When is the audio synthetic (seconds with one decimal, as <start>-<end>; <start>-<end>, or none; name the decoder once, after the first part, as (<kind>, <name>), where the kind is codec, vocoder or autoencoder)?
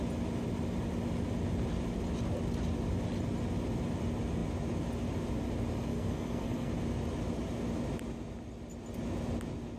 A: 5.9-6.7 (codec, SNAC)